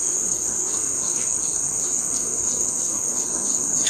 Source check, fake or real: fake